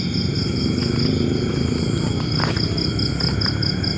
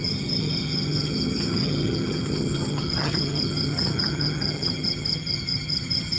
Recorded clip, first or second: first